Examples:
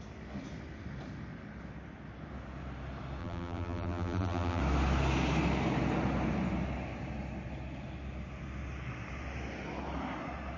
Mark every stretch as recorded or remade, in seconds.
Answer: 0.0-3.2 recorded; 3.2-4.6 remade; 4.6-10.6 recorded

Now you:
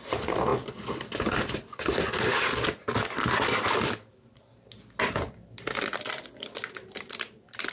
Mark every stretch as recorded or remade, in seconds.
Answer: 0.0-0.5 remade; 0.5-5.1 recorded; 5.1-7.7 remade